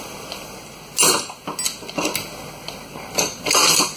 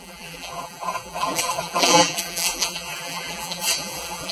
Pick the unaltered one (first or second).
first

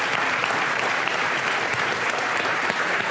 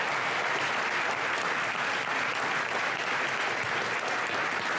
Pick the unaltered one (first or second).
second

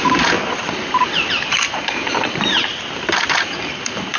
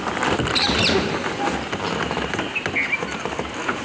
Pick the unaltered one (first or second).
second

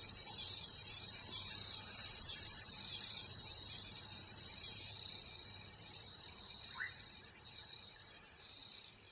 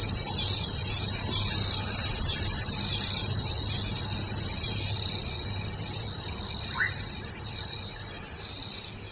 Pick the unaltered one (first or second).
second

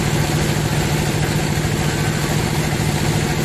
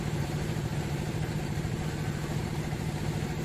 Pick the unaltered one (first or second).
first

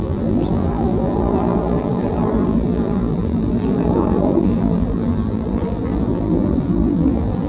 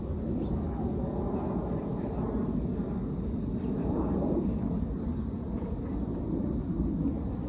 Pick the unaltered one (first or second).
second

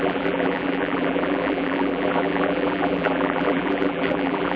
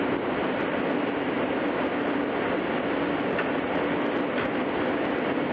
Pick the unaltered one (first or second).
second